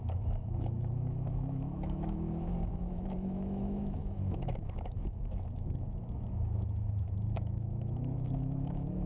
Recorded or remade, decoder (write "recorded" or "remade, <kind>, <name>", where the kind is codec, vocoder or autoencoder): remade, autoencoder, DAC-VAE